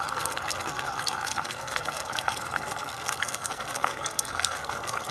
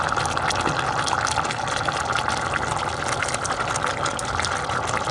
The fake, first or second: first